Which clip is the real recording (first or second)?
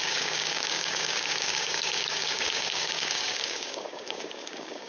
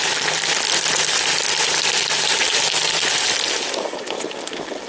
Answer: second